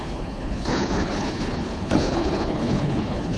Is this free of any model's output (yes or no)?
no